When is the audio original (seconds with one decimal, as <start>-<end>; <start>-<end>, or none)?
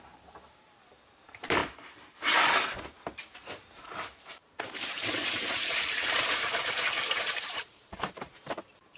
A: none